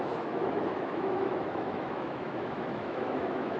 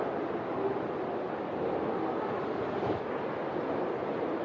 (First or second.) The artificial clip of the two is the first